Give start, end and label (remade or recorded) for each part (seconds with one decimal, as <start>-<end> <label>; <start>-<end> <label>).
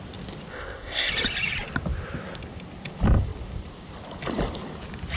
0.0-0.5 recorded; 0.5-1.1 remade; 1.1-5.2 recorded